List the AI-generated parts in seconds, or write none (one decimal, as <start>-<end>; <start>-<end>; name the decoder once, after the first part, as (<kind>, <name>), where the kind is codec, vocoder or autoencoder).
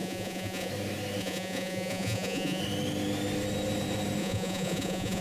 0.0-0.7 (vocoder, Vocos); 1.2-2.6; 4.2-5.2